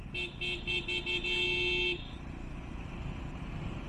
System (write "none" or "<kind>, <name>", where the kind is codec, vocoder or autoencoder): none